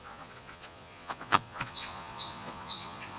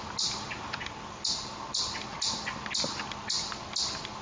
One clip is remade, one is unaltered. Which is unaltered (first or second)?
second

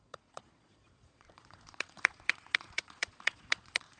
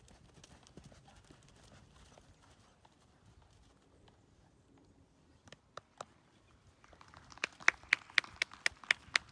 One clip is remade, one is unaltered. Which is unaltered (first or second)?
second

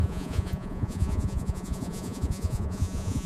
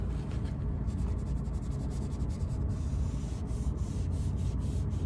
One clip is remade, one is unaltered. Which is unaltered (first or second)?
second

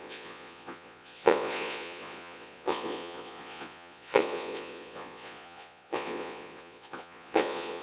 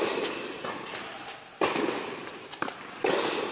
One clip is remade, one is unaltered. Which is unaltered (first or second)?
second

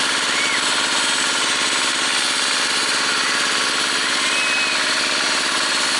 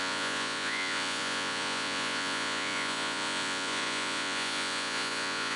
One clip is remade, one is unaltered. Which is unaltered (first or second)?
first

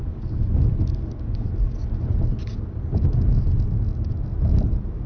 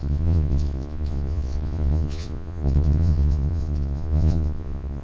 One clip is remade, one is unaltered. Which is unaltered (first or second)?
first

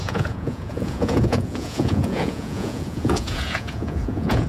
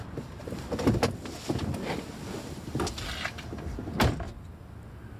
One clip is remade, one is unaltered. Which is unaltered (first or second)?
second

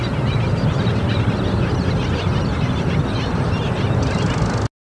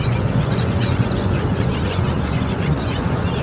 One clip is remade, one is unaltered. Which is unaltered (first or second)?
first